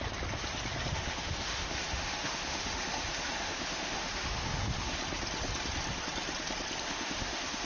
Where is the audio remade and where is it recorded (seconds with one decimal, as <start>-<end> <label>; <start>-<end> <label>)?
0.0-0.9 recorded; 0.9-5.0 remade; 5.0-6.8 recorded; 6.8-7.6 remade

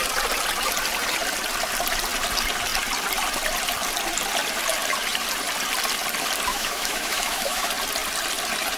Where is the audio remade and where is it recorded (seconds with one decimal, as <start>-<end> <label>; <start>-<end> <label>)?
0.0-6.5 recorded; 6.5-7.7 remade; 7.7-8.8 recorded

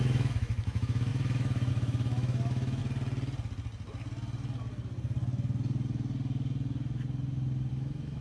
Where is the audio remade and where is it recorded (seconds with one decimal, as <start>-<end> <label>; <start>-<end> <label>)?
0.0-2.8 remade; 2.8-7.7 recorded; 7.7-8.2 remade

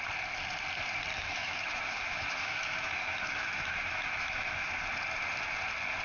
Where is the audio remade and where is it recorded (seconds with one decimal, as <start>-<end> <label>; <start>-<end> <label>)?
0.0-1.1 recorded; 1.1-4.7 remade; 4.7-6.0 recorded

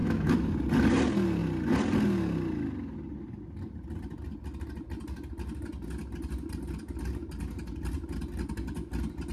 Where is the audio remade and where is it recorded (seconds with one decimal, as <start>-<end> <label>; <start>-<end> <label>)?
0.0-0.5 remade; 0.5-9.3 recorded

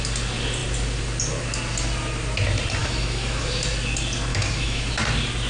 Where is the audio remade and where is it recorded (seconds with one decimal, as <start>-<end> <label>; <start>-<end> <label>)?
0.0-2.8 recorded; 2.8-3.4 remade; 3.4-4.3 recorded; 4.3-4.9 remade; 4.9-5.5 recorded

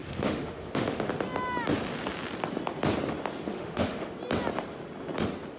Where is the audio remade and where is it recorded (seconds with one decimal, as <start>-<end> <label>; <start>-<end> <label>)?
0.0-1.1 remade; 1.1-3.5 recorded; 3.5-4.1 remade; 4.1-5.6 recorded